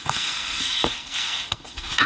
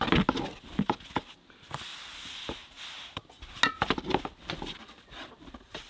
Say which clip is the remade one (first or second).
first